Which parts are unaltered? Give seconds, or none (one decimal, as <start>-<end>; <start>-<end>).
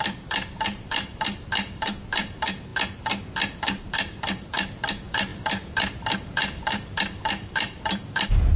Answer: 2.7-3.6